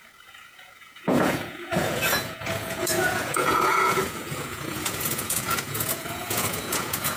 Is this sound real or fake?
fake